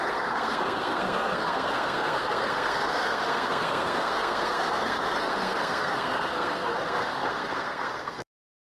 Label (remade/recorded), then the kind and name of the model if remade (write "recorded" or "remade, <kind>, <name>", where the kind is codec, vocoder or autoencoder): remade, codec, SNAC